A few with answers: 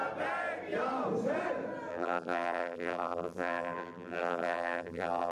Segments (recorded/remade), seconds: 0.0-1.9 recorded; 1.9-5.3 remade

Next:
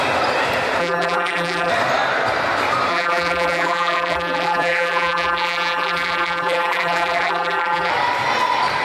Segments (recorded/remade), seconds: 0.0-0.8 recorded; 0.8-1.7 remade; 1.7-2.9 recorded; 2.9-7.9 remade; 7.9-8.8 recorded

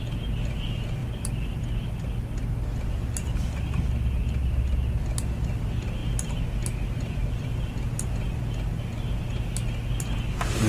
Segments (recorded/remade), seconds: 0.0-10.7 recorded

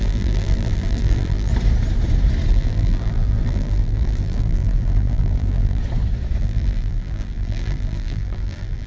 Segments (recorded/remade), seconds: 0.0-1.5 remade; 1.5-2.5 recorded; 2.5-5.8 remade; 5.8-6.4 recorded; 6.4-8.9 remade

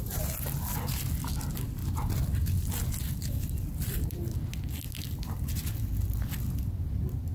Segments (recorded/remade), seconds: 0.0-7.3 recorded

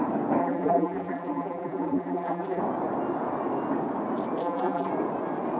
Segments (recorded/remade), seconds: 0.0-0.4 recorded; 0.4-2.6 remade; 2.6-4.4 recorded; 4.4-4.9 remade; 4.9-5.6 recorded

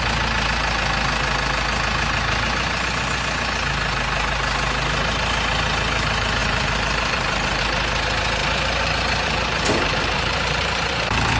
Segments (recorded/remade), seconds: 0.0-6.4 recorded; 6.4-7.6 remade; 7.6-8.4 recorded; 8.4-11.4 remade

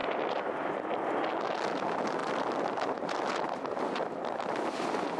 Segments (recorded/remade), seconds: 0.0-5.2 recorded